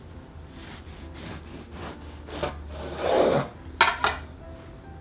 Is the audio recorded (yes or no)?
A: yes